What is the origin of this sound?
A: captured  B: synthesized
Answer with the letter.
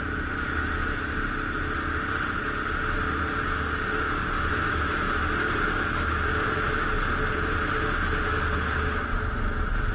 A